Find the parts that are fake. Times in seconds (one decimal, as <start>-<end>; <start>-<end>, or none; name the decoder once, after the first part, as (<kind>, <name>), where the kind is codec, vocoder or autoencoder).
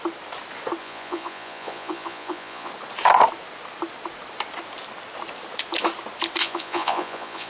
0.8-2.7 (vocoder, Vocos); 6.4-7.5